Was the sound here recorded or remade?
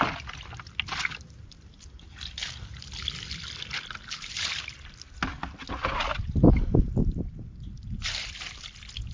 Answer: recorded